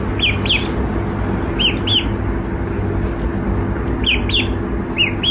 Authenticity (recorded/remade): recorded